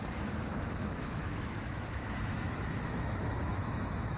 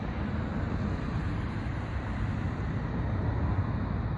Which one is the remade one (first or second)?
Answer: first